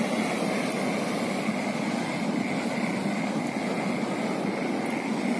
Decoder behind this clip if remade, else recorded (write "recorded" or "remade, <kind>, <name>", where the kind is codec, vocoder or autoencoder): recorded